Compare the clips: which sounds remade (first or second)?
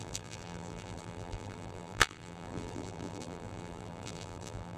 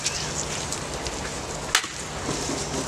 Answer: first